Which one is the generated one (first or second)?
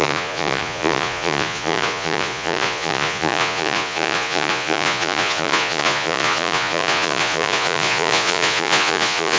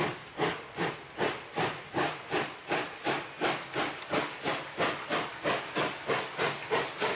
first